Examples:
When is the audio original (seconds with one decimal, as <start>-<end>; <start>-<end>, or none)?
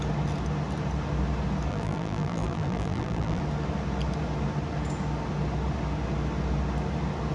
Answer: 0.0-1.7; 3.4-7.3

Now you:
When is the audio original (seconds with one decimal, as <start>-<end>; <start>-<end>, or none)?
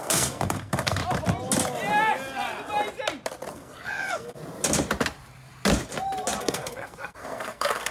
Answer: 1.0-3.5; 4.4-6.4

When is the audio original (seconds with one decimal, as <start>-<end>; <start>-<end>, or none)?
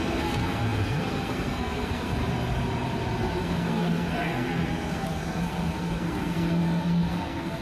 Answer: 2.2-3.4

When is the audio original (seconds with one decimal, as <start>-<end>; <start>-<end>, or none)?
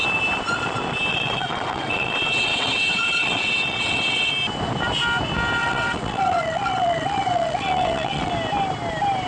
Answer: 0.0-1.1; 4.3-5.6; 8.3-9.3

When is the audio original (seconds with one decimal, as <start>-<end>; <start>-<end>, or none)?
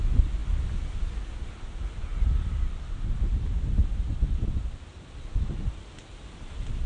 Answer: 0.0-6.9